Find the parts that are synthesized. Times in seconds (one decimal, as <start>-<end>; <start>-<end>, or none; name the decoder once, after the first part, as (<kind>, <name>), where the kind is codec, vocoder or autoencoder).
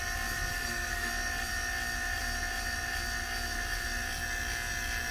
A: 0.5-1.1 (codec, SNAC)